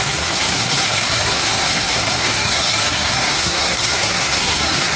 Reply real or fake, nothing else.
fake